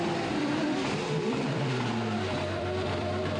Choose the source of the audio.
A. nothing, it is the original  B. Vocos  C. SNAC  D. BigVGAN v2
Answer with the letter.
D